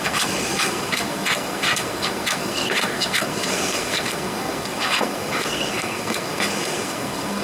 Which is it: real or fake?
fake